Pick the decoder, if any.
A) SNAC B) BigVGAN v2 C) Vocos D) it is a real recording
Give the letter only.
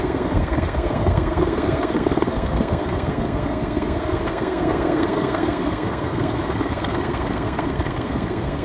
A